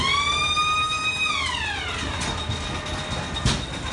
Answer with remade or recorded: recorded